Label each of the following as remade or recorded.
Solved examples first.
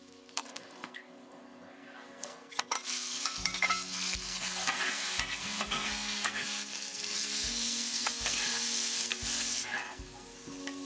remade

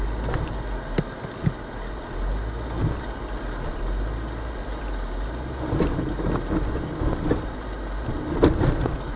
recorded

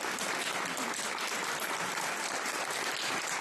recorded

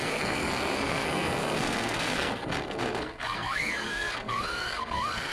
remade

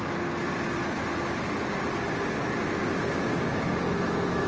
recorded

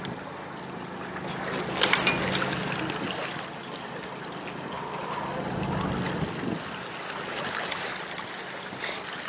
recorded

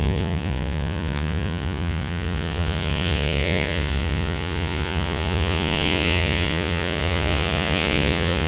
remade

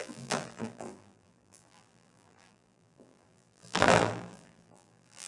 remade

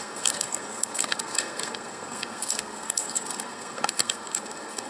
remade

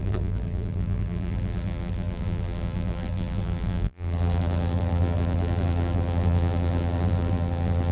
remade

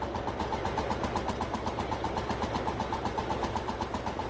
recorded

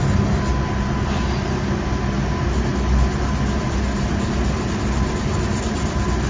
recorded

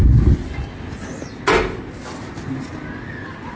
recorded